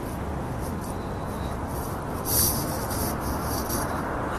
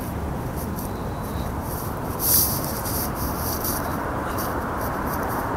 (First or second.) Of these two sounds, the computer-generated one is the second